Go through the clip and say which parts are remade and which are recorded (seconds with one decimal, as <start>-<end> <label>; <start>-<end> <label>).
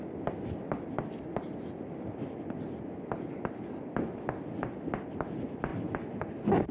0.0-6.7 recorded